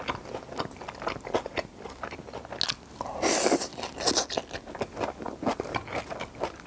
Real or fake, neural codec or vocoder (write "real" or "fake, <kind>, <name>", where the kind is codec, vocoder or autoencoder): real